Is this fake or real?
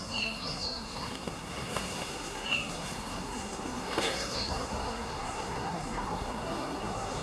fake